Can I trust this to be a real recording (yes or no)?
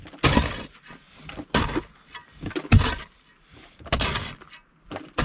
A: yes